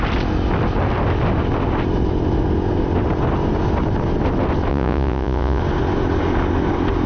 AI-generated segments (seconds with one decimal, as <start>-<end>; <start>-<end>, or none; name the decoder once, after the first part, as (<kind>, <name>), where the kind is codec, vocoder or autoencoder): 4.7-5.6 (vocoder, Vocos)